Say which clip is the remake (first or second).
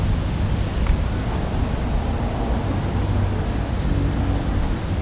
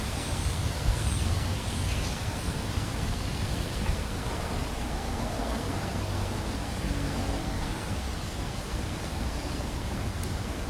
second